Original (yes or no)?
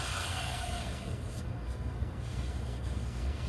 no